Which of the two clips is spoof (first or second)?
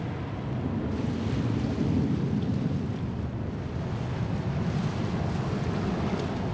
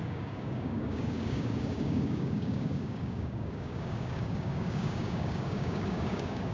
second